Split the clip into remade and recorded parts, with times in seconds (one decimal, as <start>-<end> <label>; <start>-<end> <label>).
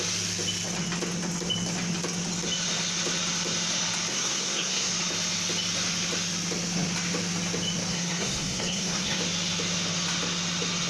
0.0-4.1 recorded; 4.1-4.9 remade; 4.9-7.9 recorded; 7.9-9.2 remade; 9.2-10.9 recorded